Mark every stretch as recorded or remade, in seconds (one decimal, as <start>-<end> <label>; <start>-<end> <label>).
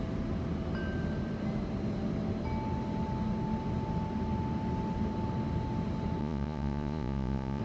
0.0-6.2 recorded; 6.2-7.6 remade